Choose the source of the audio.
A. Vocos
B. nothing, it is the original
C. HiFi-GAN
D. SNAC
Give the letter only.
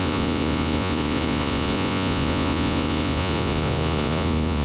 A